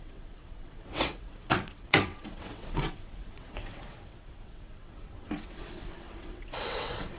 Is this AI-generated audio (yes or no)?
yes